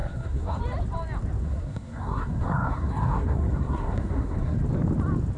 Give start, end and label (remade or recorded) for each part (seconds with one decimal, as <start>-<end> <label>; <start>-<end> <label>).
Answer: 0.0-0.6 remade; 0.6-1.4 recorded; 1.4-4.6 remade; 4.6-5.4 recorded